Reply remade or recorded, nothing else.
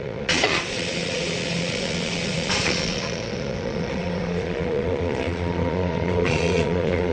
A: remade